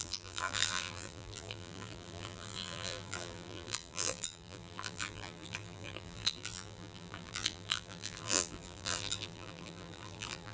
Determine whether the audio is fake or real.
fake